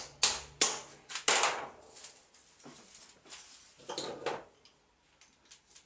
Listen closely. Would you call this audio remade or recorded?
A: recorded